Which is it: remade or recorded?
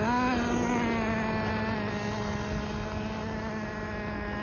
recorded